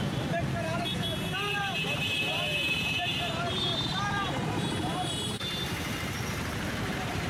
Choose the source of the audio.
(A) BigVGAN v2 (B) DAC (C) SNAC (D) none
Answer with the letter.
A